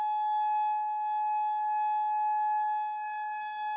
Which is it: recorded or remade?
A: remade